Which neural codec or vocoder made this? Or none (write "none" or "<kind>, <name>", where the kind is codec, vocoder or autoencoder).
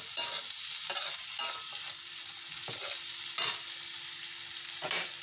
none